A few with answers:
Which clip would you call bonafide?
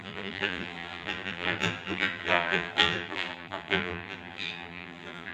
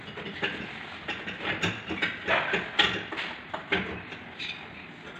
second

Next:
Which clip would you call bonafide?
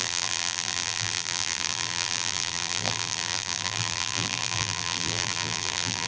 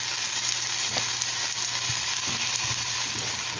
second